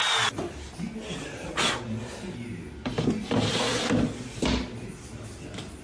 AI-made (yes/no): no